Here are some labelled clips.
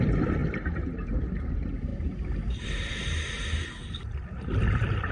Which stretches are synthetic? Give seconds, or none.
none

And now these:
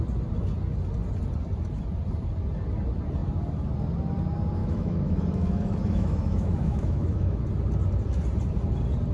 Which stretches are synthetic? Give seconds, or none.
4.6-7.4 (autoencoder, DAC-VAE)

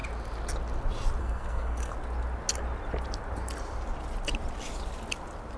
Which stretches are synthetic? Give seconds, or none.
1.2-1.9 (codec, SNAC)

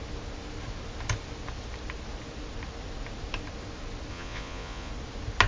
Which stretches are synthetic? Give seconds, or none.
4.1-4.9 (vocoder, Vocos)

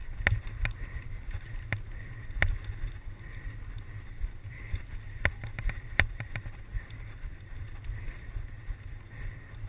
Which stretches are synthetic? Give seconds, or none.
6.7-8.0 (vocoder, BigVGAN v2)

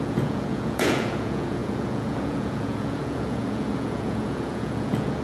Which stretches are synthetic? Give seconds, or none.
0.0-5.2 (vocoder, Vocos)

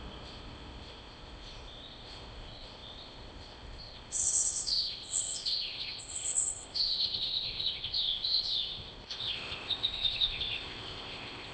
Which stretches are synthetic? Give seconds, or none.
0.0-11.5 (codec, ZipCodec)

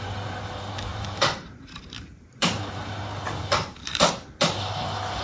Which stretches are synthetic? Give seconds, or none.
0.9-4.0 (vocoder, BigVGAN v2)